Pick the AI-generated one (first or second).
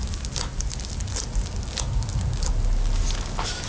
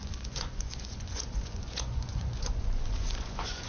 second